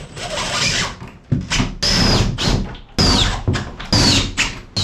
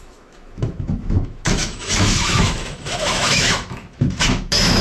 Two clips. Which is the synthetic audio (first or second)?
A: second